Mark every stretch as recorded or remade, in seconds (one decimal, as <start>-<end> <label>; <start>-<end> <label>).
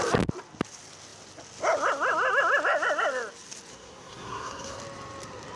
0.0-3.7 recorded; 3.7-4.8 remade; 4.8-5.6 recorded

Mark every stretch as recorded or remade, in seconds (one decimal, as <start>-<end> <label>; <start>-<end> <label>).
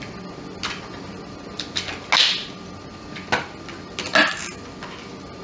0.0-5.4 recorded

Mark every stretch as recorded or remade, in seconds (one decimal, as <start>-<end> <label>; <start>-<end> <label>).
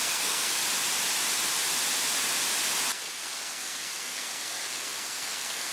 0.0-0.6 remade; 0.6-2.9 recorded; 2.9-5.7 remade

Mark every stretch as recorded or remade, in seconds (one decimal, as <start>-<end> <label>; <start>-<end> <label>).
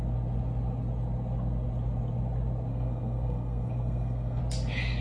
0.0-2.7 recorded; 2.7-4.4 remade; 4.4-5.0 recorded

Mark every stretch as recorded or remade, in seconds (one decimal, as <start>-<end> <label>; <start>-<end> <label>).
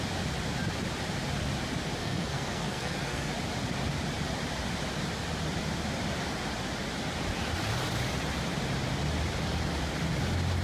0.0-2.0 recorded; 2.0-3.3 remade; 3.3-10.6 recorded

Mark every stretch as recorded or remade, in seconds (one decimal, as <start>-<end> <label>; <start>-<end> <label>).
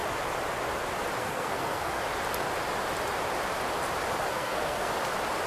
0.0-1.2 recorded; 1.2-2.0 remade; 2.0-4.3 recorded; 4.3-4.9 remade; 4.9-5.5 recorded